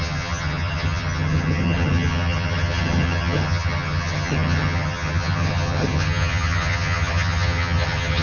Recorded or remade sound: remade